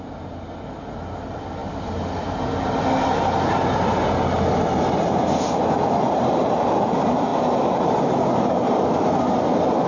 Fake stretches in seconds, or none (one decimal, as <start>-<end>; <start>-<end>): none